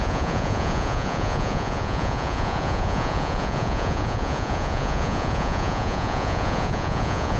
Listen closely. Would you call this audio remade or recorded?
remade